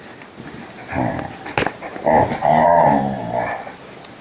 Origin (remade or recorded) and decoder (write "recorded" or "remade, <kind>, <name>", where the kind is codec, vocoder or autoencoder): recorded